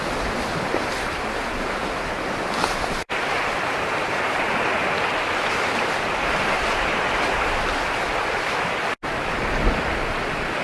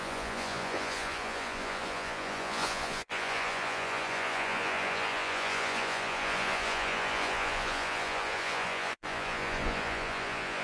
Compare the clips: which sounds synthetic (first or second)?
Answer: second